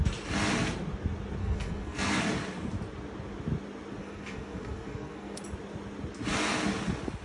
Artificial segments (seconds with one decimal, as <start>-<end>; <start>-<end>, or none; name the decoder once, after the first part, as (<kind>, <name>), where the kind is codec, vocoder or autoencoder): 1.4-2.2 (codec, SNAC); 4.0-5.4